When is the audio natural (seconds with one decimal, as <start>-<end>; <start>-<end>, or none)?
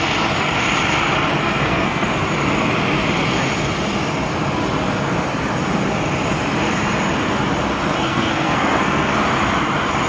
0.0-1.4; 2.1-8.0; 9.1-10.1